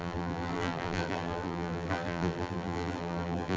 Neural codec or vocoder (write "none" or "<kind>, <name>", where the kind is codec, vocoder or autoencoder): vocoder, BigVGAN v2